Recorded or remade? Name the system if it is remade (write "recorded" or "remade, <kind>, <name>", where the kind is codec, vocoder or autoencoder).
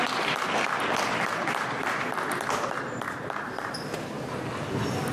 recorded